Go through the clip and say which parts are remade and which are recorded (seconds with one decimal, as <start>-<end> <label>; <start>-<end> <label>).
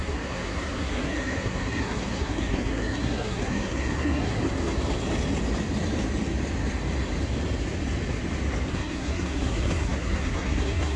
0.0-4.4 remade; 4.4-8.7 recorded; 8.7-11.0 remade